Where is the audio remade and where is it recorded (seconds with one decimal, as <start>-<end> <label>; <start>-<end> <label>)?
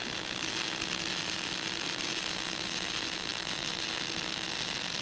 0.0-5.0 recorded